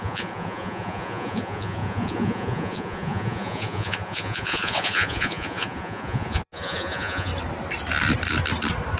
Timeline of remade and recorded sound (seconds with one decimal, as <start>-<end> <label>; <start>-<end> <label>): 0.0-7.3 remade; 7.3-9.0 recorded